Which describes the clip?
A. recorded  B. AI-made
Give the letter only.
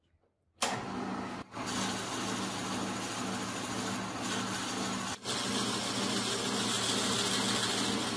A